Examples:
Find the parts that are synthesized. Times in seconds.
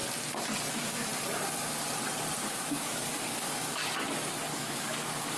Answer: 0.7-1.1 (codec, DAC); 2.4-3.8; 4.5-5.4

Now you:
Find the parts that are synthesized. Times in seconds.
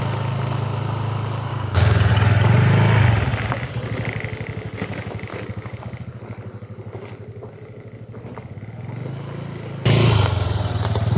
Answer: 1.5-2.1 (codec, DAC); 5.3-5.8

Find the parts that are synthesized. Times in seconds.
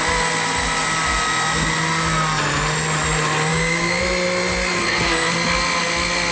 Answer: 3.5-4.0 (codec, DAC)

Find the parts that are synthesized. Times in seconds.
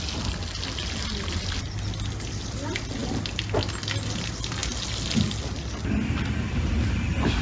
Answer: none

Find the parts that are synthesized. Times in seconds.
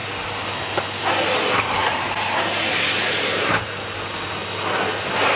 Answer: none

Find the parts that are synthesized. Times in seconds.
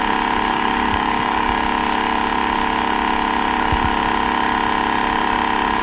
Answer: 0.5-1.5 (codec, DAC)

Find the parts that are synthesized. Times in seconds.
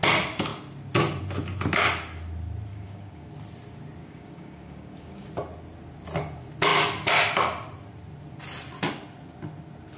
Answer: 2.7-3.3 (codec, DAC); 4.0-5.3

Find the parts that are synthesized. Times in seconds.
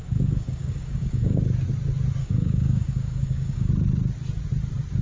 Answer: 0.0-1.4 (codec, DAC); 2.2-3.7